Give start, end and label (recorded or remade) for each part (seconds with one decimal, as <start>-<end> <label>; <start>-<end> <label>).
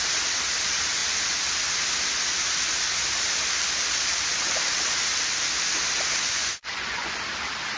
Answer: 0.0-6.2 recorded; 6.2-7.2 remade; 7.2-7.8 recorded